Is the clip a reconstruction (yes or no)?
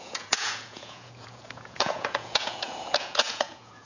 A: yes